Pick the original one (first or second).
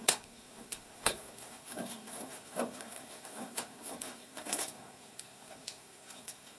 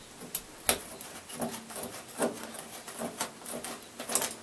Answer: second